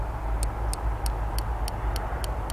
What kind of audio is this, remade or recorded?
recorded